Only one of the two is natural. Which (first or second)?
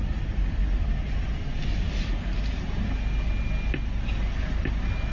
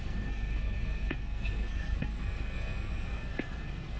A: first